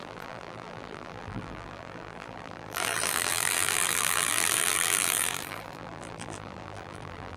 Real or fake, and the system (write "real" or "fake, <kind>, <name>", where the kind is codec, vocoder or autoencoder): fake, vocoder, BigVGAN v2